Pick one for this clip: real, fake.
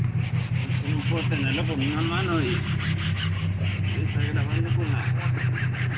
real